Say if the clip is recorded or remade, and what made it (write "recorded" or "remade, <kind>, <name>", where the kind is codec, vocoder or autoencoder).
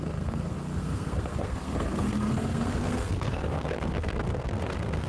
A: remade, codec, SNAC